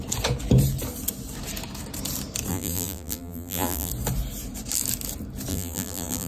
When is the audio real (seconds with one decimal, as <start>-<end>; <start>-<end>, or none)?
0.0-2.5; 3.9-5.5